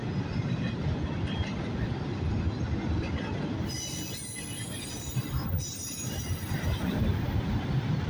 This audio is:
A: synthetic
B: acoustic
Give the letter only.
B